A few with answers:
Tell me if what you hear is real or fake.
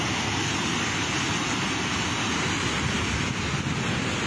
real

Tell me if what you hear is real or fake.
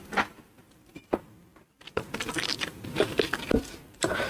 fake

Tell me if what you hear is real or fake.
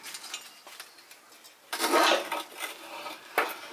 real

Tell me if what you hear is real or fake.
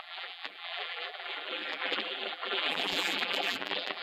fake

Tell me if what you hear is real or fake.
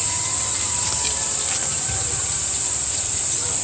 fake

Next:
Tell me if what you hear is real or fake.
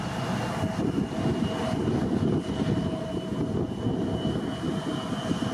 real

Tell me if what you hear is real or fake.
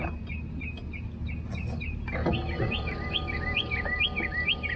real